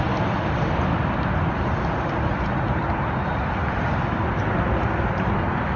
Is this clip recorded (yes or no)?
yes